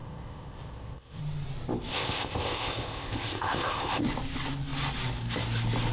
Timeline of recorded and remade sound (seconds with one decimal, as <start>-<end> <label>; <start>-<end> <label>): 0.0-1.2 remade; 1.2-1.9 recorded; 1.9-4.0 remade; 4.0-5.9 recorded